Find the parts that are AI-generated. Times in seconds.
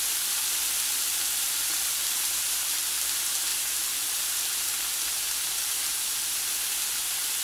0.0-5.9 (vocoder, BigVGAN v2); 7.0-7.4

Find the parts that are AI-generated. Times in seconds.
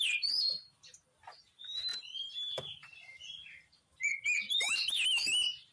0.0-5.7 (vocoder, BigVGAN v2)